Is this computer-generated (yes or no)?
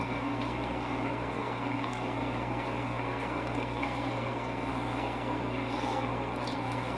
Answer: yes